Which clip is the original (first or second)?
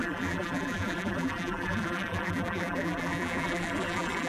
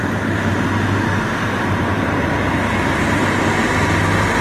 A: second